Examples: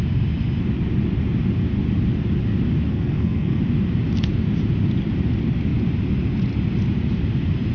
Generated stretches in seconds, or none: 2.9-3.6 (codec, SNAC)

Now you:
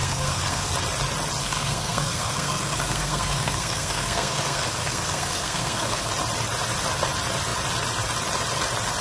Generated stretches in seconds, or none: 0.0-0.7 (codec, SNAC); 1.4-6.1

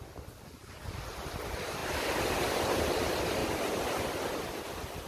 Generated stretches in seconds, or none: none

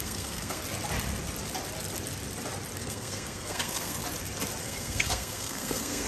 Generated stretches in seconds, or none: 0.0-0.6 (codec, SNAC); 2.8-4.0; 4.6-6.1

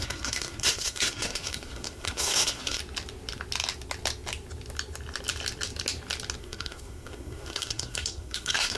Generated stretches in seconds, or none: 0.0-2.8 (codec, SNAC); 6.4-8.8